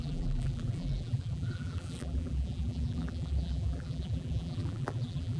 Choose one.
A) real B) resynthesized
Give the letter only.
B